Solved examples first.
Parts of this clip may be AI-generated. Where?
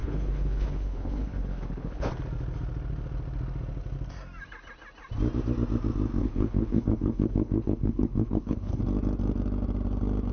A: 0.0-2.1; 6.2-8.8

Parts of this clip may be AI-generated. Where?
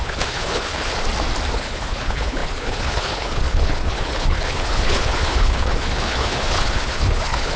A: 0.0-0.9; 1.5-7.6